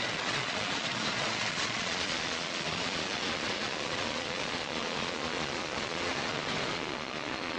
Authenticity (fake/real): fake